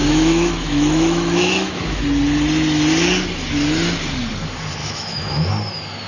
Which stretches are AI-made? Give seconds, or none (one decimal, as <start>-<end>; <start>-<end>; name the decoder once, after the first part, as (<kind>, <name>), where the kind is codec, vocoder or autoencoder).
0.0-2.0 (autoencoder, DAC-VAE); 4.8-5.5